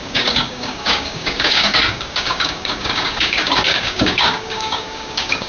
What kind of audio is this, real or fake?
fake